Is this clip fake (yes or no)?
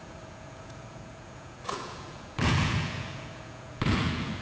yes